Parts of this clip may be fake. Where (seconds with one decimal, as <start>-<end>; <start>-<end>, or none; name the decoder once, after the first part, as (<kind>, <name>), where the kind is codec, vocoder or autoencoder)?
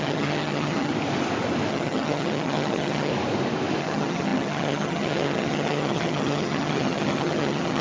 0.0-0.9 (vocoder, HiFi-GAN); 1.7-3.1; 3.8-7.8